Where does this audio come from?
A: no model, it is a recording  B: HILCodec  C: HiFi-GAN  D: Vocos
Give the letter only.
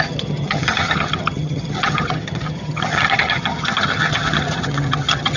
C